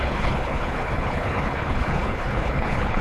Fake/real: fake